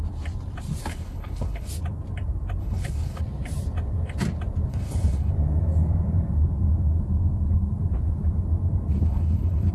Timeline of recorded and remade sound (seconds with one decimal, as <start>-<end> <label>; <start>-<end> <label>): 0.0-0.9 recorded; 0.9-1.7 remade; 1.7-2.6 recorded; 2.6-3.2 remade; 3.2-4.7 recorded; 4.7-5.3 remade; 5.3-8.9 recorded; 8.9-9.7 remade